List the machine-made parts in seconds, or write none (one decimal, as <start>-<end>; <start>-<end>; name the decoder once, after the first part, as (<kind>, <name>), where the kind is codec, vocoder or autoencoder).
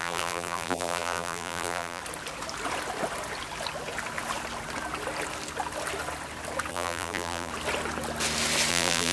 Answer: 0.0-2.0 (vocoder, BigVGAN v2); 6.7-7.5; 8.7-9.1